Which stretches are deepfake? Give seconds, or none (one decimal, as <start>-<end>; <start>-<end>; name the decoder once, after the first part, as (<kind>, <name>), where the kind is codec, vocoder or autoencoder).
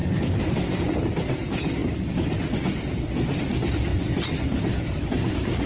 0.0-5.7 (vocoder, BigVGAN v2)